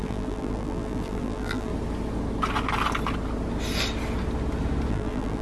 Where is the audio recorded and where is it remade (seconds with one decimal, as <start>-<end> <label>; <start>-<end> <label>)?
0.0-1.7 remade; 1.7-4.9 recorded; 4.9-5.4 remade